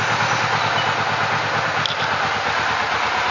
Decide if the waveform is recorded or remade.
recorded